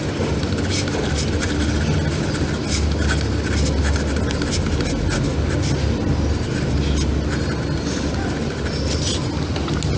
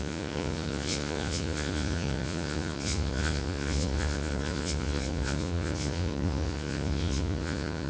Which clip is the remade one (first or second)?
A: second